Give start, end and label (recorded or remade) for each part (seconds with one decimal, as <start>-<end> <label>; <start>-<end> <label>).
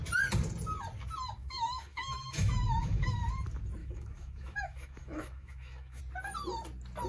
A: 0.0-1.4 recorded; 1.4-3.2 remade; 3.2-3.8 recorded; 3.8-6.0 remade; 6.0-7.1 recorded